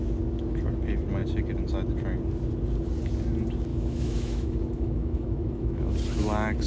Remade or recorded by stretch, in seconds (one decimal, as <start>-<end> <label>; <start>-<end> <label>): 0.0-3.7 recorded; 3.7-5.9 remade; 5.9-6.7 recorded